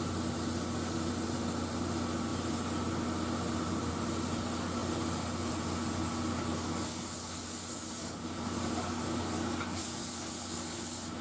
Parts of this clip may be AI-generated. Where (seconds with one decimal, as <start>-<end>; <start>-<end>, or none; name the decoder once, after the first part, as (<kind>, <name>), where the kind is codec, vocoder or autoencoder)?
6.3-11.2 (codec, DAC)